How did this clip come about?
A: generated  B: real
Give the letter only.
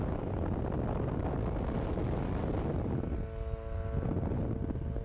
B